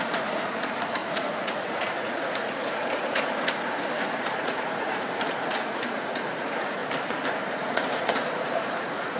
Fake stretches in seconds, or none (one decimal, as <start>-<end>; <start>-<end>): 0.0-6.8; 7.5-9.2